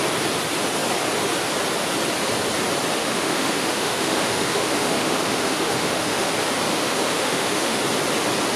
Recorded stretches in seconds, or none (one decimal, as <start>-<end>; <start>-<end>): 0.0-3.0; 6.3-6.7; 7.8-8.6